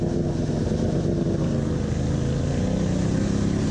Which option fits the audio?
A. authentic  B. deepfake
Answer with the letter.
A